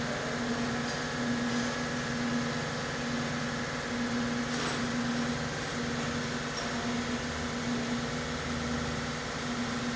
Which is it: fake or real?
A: real